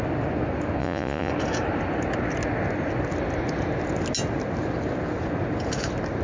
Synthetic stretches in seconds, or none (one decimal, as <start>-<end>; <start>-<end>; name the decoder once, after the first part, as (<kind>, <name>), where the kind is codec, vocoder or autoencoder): 0.8-1.3 (vocoder, Vocos)